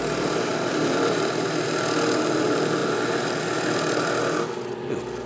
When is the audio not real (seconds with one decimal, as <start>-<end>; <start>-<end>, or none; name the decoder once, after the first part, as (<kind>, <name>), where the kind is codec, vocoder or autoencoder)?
none